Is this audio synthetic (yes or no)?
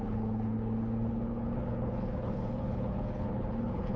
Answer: yes